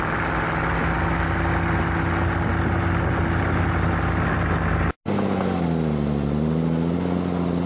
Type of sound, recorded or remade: recorded